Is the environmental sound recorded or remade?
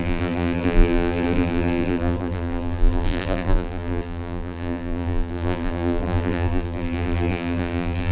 remade